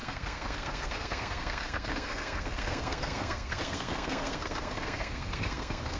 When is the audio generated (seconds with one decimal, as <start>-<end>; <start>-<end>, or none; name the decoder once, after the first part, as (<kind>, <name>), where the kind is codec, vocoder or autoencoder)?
0.0-6.0 (codec, SNAC)

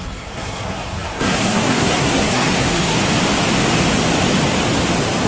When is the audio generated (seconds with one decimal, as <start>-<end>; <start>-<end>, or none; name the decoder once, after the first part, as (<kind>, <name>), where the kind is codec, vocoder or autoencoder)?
0.0-3.0 (codec, SNAC)

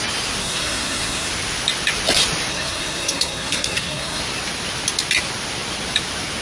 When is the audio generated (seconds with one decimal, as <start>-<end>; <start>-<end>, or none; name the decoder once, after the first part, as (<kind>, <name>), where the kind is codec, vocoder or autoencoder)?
0.4-1.3 (codec, SNAC); 2.5-4.2

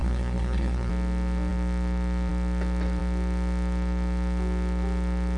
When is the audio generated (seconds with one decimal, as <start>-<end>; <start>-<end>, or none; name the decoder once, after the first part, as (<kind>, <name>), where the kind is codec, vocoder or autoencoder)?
0.0-0.9 (codec, SNAC)

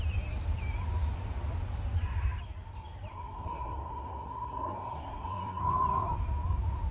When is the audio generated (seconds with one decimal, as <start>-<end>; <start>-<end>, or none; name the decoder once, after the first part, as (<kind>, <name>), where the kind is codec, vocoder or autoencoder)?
3.1-5.6 (codec, SNAC)

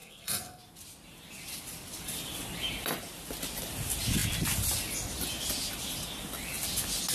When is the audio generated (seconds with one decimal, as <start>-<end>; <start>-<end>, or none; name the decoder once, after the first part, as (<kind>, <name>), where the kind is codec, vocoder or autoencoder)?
0.0-0.6 (codec, SNAC)

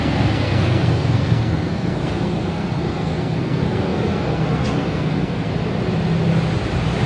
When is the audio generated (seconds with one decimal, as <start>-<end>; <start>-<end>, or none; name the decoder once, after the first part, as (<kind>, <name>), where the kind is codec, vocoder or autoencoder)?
0.0-5.5 (codec, SNAC)

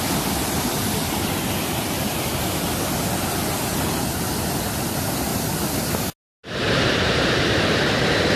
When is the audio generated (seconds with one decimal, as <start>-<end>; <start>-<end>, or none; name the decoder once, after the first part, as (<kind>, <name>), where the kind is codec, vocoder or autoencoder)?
none